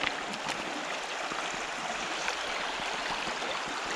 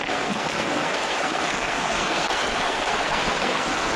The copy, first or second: second